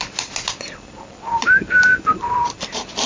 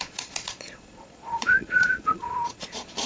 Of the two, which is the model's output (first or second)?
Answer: second